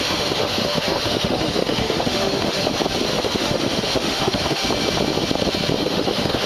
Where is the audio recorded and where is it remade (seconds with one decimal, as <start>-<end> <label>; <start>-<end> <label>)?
0.0-2.7 remade; 2.7-3.2 recorded; 3.2-4.6 remade; 4.6-5.8 recorded; 5.8-6.5 remade